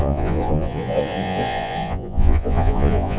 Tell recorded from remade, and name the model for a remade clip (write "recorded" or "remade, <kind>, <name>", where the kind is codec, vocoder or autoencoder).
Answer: remade, vocoder, Vocos